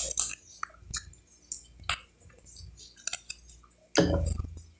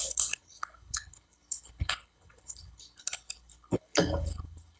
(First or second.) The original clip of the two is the first